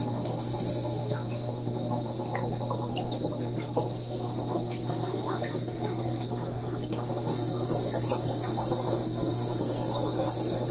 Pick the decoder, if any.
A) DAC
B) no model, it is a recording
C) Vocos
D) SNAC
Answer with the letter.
D